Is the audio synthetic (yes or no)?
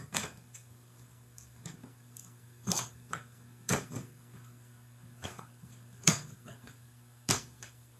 yes